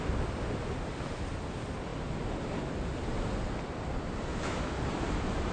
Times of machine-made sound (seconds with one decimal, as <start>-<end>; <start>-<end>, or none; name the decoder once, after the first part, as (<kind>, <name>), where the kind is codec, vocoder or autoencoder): 4.3-4.8 (autoencoder, DAC-VAE)